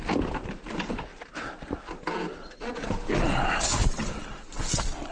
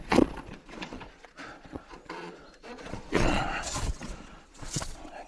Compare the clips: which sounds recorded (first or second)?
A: first